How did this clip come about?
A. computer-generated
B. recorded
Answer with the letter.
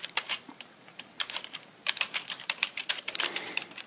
A